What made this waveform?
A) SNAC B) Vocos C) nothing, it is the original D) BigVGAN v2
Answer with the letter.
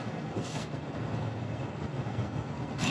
A